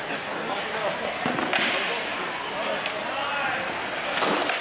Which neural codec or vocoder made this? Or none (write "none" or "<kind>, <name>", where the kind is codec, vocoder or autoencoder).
none